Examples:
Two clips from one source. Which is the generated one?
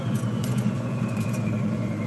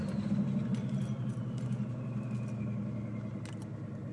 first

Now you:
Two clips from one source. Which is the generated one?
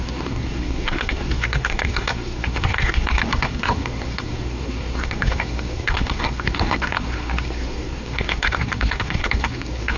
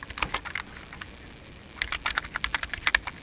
first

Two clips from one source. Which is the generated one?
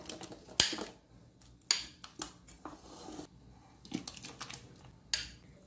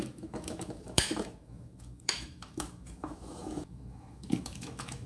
second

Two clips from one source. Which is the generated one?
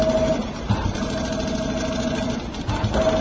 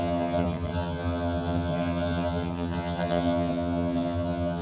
second